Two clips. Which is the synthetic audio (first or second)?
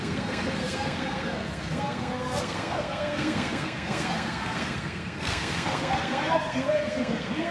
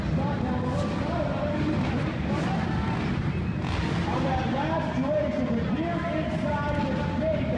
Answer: first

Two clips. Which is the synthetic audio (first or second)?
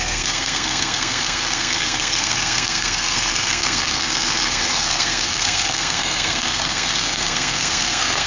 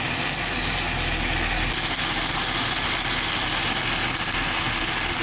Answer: first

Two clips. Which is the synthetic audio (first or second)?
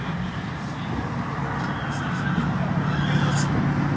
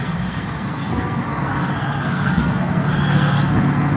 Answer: second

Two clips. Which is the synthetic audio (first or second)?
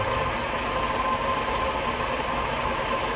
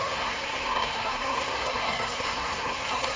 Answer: second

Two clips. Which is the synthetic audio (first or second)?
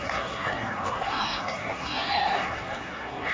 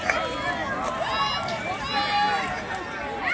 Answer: first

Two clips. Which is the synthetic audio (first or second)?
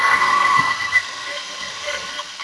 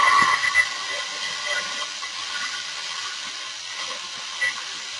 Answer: first